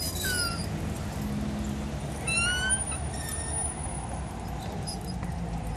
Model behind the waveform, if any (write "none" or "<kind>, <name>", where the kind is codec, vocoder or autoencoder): none